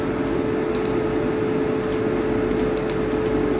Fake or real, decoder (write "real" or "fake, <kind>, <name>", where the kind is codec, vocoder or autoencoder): real